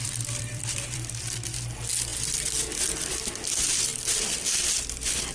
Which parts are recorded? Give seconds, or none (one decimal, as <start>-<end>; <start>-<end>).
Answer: none